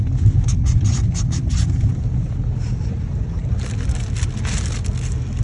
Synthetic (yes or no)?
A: no